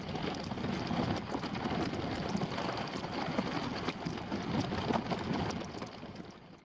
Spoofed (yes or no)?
no